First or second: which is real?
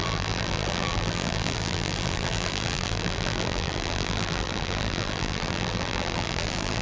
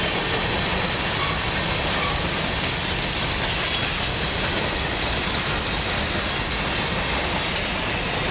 second